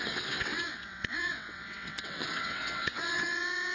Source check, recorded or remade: remade